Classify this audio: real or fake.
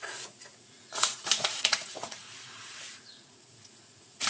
fake